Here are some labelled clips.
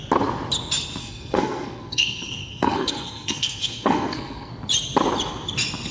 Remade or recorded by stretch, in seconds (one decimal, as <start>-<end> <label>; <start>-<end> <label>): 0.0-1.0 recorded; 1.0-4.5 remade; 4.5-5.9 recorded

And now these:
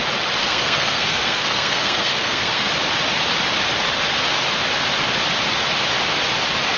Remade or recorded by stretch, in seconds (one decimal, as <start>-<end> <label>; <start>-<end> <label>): 0.0-0.4 recorded; 0.4-2.7 remade; 2.7-6.8 recorded

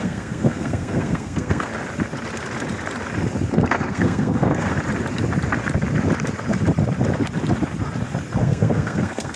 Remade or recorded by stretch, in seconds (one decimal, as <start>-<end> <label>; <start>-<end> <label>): 0.0-1.7 remade; 1.7-3.5 recorded; 3.5-4.7 remade; 4.7-8.4 recorded; 8.4-9.4 remade

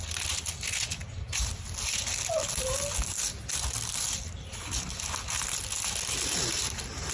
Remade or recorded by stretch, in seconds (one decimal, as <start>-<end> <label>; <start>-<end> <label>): 0.0-7.1 recorded